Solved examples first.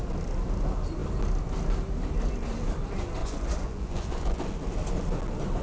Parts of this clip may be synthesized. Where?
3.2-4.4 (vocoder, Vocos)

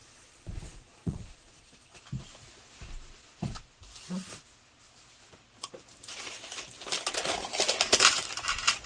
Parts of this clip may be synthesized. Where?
0.0-2.0 (vocoder, Vocos)

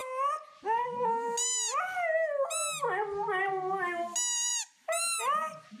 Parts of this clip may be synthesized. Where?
none